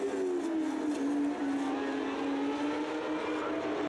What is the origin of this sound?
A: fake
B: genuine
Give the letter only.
B